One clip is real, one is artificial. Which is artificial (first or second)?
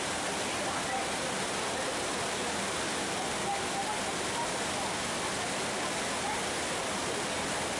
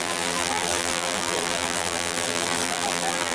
second